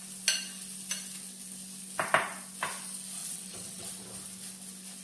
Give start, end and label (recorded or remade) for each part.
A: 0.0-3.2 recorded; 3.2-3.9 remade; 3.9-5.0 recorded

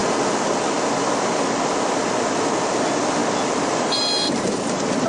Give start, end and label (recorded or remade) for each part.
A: 0.0-5.1 recorded

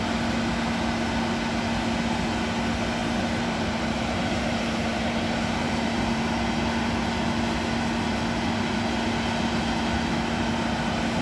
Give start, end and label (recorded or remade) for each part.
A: 0.0-3.0 recorded; 3.0-6.2 remade; 6.2-11.2 recorded

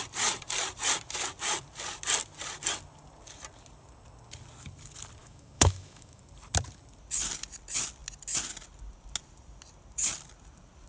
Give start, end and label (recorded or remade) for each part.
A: 0.0-5.2 recorded; 5.2-6.2 remade; 6.2-10.9 recorded

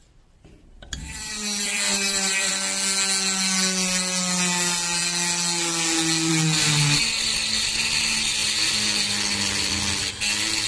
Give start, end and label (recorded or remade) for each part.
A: 0.0-2.5 remade; 2.5-10.7 recorded

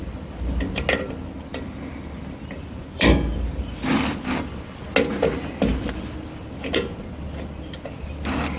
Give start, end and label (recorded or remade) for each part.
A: 0.0-1.5 recorded; 1.5-4.2 remade; 4.2-8.6 recorded

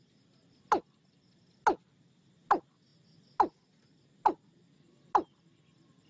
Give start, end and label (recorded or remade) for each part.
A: 0.0-6.1 recorded

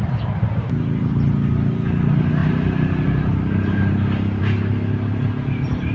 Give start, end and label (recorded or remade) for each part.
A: 0.0-5.9 recorded